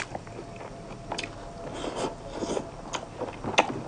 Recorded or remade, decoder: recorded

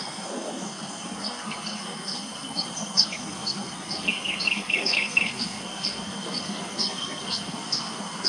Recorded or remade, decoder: remade, codec, SNAC